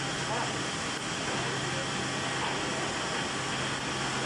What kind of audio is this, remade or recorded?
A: recorded